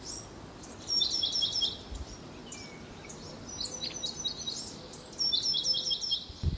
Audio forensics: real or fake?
real